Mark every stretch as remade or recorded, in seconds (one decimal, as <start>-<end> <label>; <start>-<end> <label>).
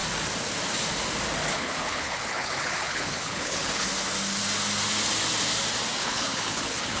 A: 0.0-1.5 recorded; 1.5-3.9 remade; 3.9-6.0 recorded; 6.0-7.0 remade